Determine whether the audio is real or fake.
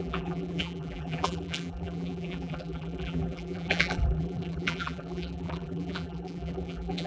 fake